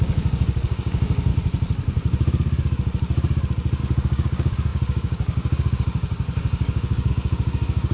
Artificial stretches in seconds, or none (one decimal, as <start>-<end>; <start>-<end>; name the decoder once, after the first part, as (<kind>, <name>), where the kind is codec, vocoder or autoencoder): 0.0-1.3 (codec, DAC); 3.8-7.9